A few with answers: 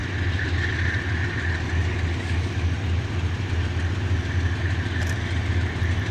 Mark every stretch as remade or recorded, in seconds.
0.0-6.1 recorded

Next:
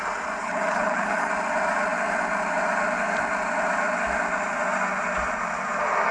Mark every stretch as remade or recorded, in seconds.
0.0-0.4 recorded; 0.4-1.3 remade; 1.3-6.1 recorded